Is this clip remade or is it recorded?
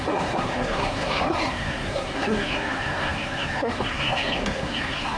remade